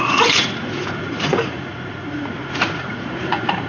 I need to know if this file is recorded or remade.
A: remade